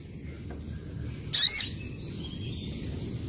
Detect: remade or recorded recorded